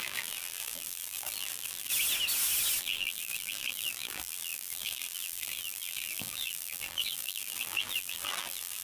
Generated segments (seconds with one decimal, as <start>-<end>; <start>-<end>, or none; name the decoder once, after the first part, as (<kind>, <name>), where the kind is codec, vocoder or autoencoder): 0.0-1.9 (vocoder, BigVGAN v2); 2.8-8.8